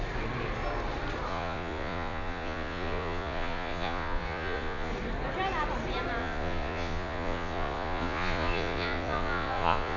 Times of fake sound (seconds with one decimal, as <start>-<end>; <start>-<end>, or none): 1.3-4.9; 6.2-10.0